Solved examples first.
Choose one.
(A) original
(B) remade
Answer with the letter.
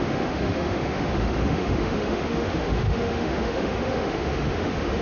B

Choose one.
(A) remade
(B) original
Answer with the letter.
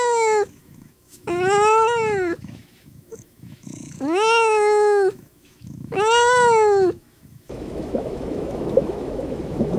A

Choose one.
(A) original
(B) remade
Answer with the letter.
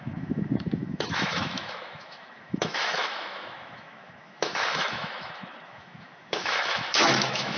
B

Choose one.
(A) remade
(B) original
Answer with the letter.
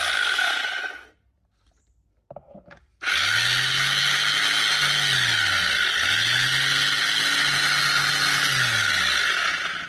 B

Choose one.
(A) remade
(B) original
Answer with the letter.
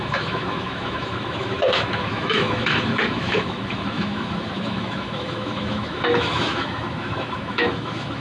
A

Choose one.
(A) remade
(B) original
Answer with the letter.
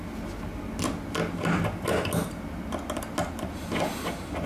B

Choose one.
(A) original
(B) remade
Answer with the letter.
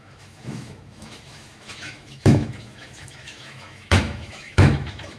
B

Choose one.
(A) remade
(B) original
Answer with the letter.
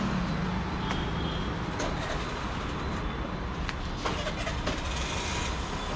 B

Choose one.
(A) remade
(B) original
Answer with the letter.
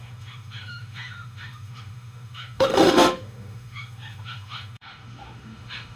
A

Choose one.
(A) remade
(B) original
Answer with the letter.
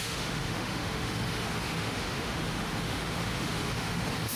A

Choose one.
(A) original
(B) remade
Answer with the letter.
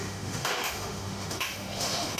B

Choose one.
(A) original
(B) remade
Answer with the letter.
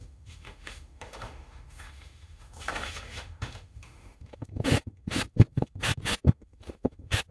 B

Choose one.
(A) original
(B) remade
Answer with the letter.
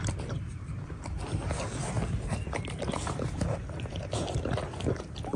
A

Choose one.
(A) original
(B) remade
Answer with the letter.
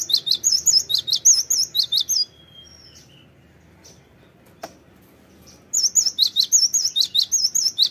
A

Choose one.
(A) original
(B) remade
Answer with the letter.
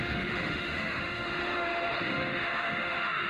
B